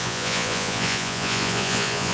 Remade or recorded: remade